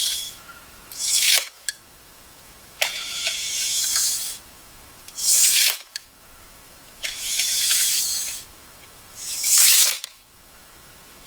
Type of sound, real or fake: fake